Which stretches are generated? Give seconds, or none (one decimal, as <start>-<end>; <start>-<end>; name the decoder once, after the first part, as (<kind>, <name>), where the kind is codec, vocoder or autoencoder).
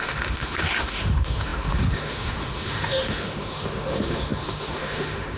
0.0-5.4 (autoencoder, DAC-VAE)